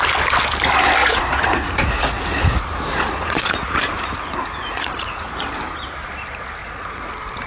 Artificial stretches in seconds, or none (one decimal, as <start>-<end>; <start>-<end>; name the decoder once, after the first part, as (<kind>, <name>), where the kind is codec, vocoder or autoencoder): 1.0-5.5 (vocoder, Vocos); 6.6-7.1